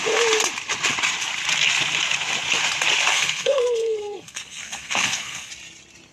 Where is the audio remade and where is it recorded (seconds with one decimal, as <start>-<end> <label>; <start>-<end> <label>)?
0.0-3.1 recorded; 3.1-5.5 remade; 5.5-6.1 recorded